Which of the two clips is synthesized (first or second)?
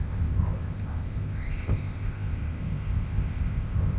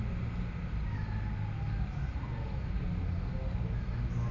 first